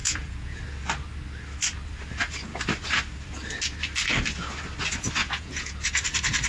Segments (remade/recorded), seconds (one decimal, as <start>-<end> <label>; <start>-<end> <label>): 0.0-0.6 remade; 0.6-5.2 recorded; 5.2-6.0 remade; 6.0-6.5 recorded